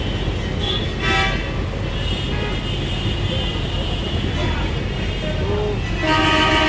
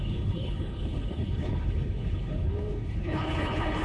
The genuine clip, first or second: first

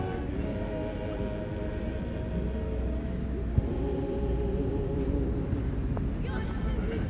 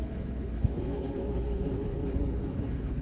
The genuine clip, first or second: first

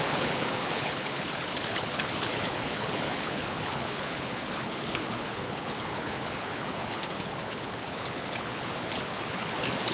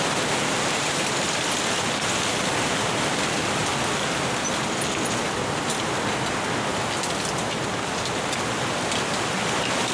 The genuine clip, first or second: second